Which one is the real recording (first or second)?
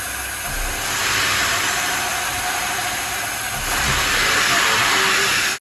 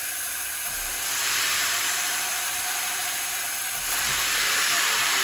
first